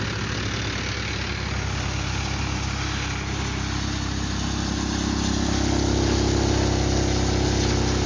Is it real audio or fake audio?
real